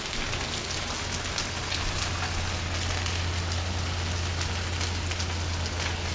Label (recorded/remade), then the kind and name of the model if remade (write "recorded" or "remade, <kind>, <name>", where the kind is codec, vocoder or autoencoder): recorded